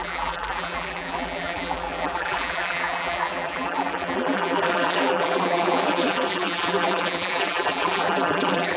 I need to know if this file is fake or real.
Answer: fake